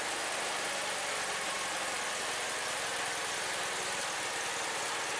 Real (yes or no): yes